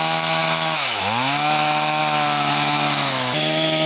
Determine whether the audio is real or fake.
fake